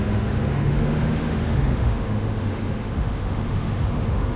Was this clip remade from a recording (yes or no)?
yes